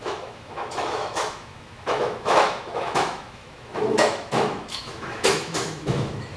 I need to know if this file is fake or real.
fake